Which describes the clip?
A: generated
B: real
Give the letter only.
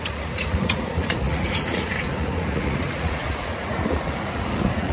A